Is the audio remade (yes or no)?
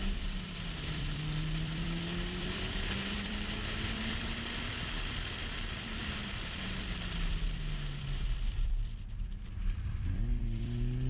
yes